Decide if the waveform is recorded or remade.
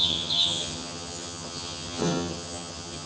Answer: remade